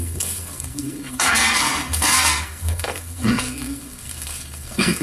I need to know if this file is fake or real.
fake